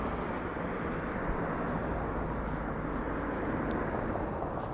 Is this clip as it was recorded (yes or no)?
yes